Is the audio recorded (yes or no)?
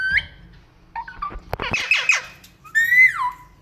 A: yes